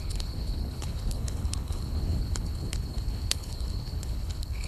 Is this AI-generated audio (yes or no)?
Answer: yes